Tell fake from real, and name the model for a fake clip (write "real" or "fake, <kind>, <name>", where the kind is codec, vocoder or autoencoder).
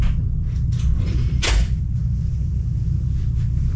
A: real